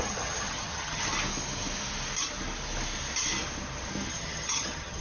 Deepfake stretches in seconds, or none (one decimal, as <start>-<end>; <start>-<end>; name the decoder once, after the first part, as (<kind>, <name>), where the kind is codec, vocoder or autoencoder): 0.0-1.1 (vocoder, HiFi-GAN); 4.1-5.0